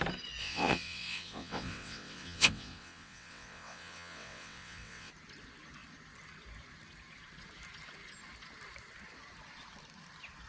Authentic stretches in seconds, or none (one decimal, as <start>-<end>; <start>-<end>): 0.0-0.4; 5.1-10.5